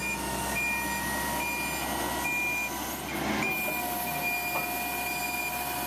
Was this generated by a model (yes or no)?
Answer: no